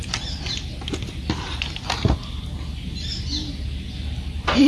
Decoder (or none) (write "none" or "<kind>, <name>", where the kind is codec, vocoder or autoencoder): none